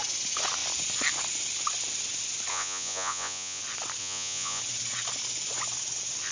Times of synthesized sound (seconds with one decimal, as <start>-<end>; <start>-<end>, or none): 2.5-3.6; 4.0-4.6